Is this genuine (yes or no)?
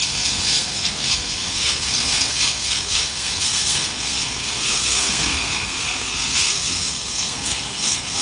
no